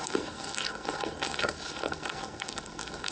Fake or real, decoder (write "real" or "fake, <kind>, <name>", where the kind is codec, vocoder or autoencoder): fake, codec, SNAC